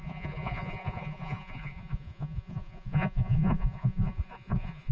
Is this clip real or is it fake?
fake